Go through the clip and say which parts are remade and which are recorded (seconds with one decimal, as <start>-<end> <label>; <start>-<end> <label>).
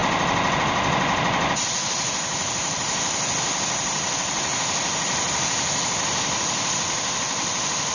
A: 0.0-7.9 recorded